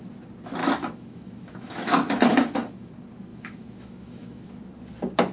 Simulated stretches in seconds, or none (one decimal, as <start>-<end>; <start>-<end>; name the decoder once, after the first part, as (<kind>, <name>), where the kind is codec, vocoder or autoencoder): 0.6-2.9 (autoencoder, DAC-VAE); 3.3-4.5